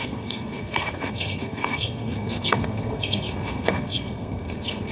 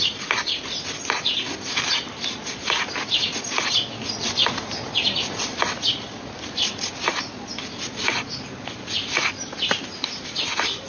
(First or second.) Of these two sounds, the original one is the second